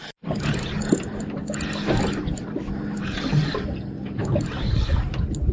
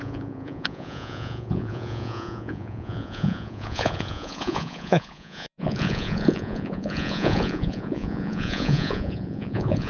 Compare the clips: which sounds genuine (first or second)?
first